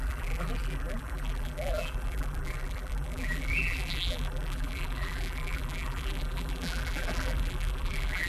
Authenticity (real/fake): fake